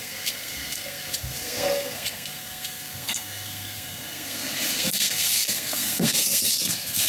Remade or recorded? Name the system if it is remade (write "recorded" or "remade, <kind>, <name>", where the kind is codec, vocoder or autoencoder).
remade, codec, SNAC